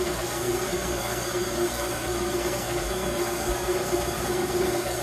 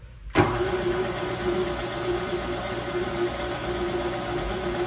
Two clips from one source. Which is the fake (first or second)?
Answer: first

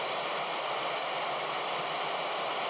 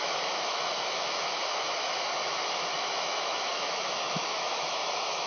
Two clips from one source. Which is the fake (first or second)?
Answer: second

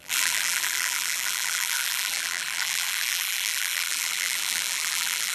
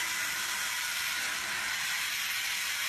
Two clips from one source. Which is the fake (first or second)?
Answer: first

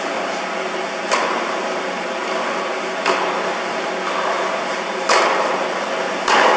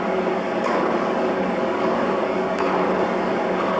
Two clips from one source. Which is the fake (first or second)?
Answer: second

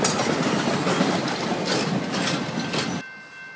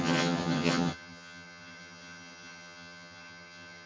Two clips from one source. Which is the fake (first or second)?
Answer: second